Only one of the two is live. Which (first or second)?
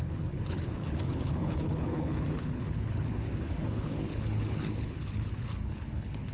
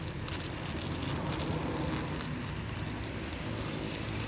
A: second